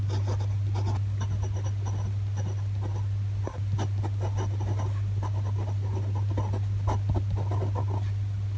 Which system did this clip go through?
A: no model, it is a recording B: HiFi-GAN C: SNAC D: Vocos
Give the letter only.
A